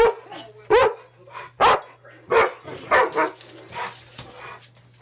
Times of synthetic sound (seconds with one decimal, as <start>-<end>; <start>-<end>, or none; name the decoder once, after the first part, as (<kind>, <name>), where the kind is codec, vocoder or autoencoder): none